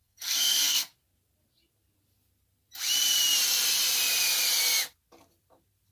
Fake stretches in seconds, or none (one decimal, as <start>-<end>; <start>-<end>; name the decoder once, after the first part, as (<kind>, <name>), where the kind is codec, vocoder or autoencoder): 0.0-0.9 (codec, SNAC)